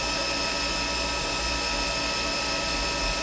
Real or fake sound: real